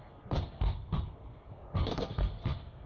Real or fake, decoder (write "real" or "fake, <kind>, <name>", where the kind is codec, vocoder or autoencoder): fake, codec, SNAC